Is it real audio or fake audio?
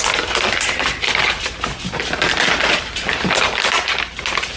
real